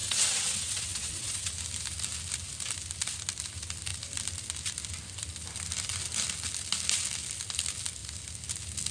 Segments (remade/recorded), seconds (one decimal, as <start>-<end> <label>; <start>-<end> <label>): 0.0-1.5 remade; 1.5-8.9 recorded